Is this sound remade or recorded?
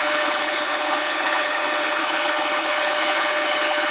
remade